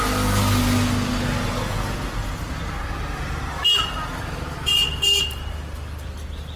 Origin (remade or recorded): recorded